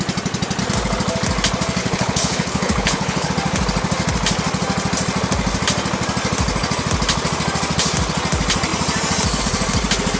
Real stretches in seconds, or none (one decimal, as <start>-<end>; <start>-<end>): 0.0-1.8; 3.3-10.2